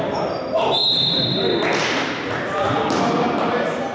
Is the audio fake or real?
real